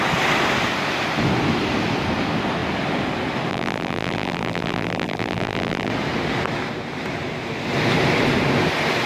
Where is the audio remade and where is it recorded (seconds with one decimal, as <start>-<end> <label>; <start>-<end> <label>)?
0.0-3.5 recorded; 3.5-5.9 remade; 5.9-9.1 recorded